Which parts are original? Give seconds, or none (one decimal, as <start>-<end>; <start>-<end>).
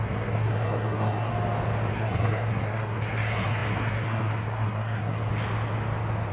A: 1.3-1.9; 5.3-6.3